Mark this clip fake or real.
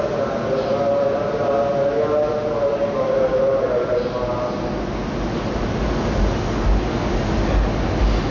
real